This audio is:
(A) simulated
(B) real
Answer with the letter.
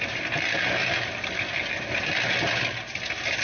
B